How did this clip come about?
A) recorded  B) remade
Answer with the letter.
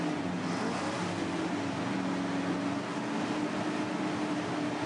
A